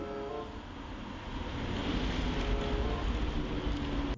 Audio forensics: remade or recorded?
recorded